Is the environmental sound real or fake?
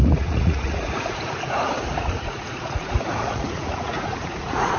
fake